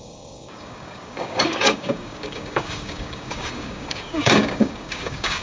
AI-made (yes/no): yes